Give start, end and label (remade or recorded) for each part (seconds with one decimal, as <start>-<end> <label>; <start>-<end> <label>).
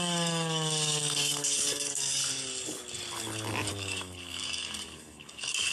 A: 0.0-2.2 remade; 2.2-3.7 recorded; 3.7-5.7 remade